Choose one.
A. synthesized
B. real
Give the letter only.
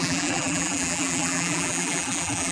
A